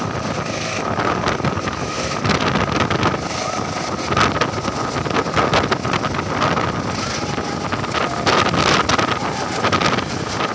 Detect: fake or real real